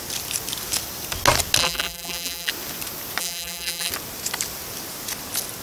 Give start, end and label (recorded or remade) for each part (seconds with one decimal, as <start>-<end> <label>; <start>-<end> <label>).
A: 0.0-1.6 recorded; 1.6-2.5 remade; 2.5-3.2 recorded; 3.2-3.9 remade; 3.9-5.6 recorded